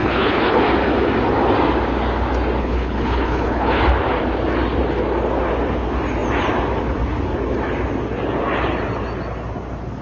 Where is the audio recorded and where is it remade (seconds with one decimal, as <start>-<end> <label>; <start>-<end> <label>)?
0.0-0.6 remade; 0.6-2.6 recorded; 2.6-3.8 remade; 3.8-10.0 recorded